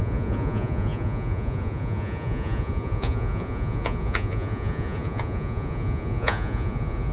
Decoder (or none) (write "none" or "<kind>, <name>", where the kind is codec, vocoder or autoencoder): vocoder, Vocos